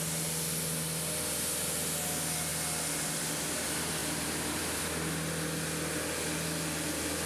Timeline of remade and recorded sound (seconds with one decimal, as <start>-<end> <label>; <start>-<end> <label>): 0.0-4.0 recorded; 4.0-4.8 remade; 4.8-7.3 recorded